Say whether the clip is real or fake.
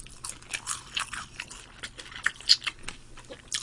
real